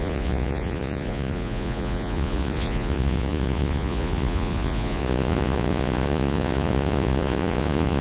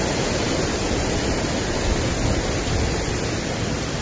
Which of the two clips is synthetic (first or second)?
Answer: first